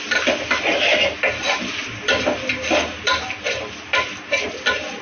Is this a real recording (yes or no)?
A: yes